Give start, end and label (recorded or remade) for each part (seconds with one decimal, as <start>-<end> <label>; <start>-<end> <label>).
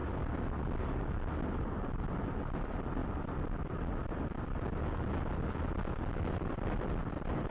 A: 0.0-7.5 recorded